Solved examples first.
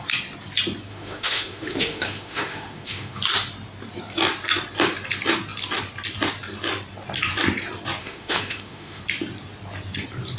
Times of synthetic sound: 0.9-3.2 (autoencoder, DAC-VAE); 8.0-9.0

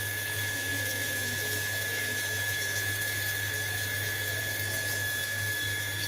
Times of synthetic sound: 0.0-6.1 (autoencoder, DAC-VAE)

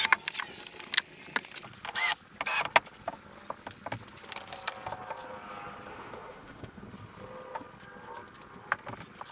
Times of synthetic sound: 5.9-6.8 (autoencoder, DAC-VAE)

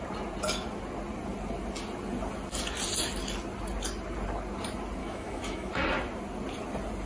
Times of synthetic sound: 5.0-5.7 (autoencoder, DAC-VAE)